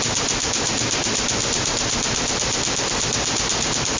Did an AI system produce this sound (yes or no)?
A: yes